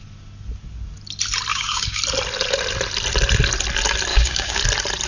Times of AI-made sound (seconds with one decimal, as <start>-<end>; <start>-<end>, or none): 1.5-2.0; 4.1-4.6